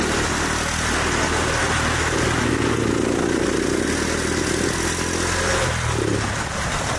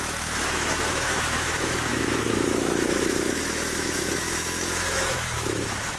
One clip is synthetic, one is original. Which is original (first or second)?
first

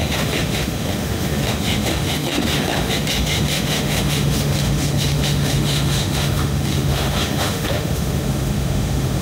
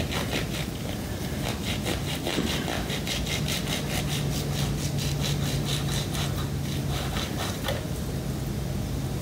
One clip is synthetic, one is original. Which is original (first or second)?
second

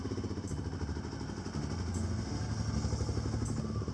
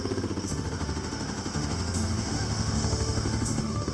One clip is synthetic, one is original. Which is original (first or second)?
first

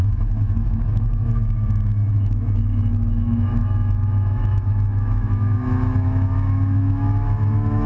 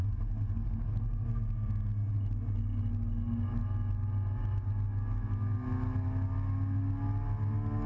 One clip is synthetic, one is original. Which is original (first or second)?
second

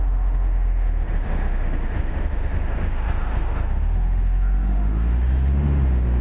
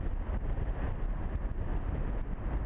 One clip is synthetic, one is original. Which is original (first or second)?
second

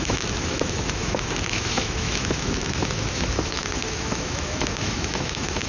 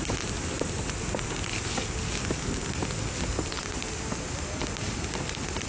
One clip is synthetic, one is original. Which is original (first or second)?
second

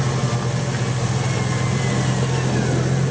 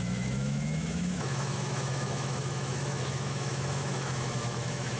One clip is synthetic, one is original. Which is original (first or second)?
first